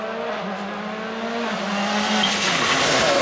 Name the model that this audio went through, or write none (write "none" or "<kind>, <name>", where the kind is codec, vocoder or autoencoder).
none